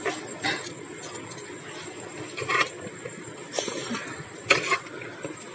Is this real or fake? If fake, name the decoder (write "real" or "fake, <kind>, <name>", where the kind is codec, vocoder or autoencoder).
real